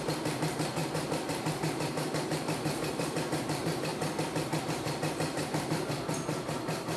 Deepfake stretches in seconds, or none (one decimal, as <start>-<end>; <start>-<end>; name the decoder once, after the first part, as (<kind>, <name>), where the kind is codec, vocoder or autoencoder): 0.0-3.9 (vocoder, BigVGAN v2); 4.6-7.0

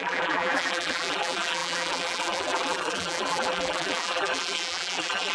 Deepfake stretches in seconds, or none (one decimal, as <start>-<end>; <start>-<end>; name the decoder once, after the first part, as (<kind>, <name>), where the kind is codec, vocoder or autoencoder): 0.0-5.3 (vocoder, BigVGAN v2)